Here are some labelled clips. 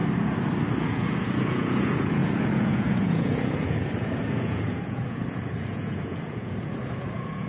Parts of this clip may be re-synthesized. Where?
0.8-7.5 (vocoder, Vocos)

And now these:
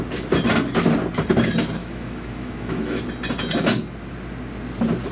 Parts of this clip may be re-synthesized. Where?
1.8-3.0 (autoencoder, DAC-VAE)

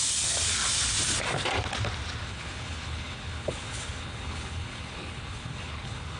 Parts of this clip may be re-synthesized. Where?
2.2-6.2 (codec, HILCodec)

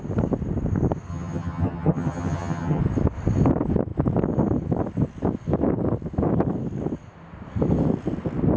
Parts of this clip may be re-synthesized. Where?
1.1-2.8 (vocoder, HiFi-GAN)

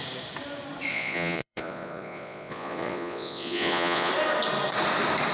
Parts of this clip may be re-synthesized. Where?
0.9-4.1 (vocoder, Vocos)

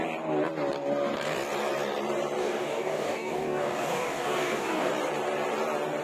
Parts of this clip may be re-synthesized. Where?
2.4-4.9 (codec, DAC)

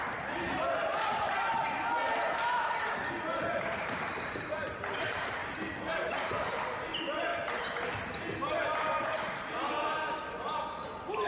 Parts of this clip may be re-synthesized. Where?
0.0-0.9 (vocoder, BigVGAN v2); 3.2-5.4; 6.0-7.3

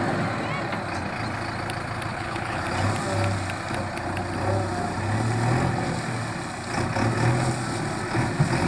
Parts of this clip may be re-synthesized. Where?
2.1-2.6 (codec, HILCodec)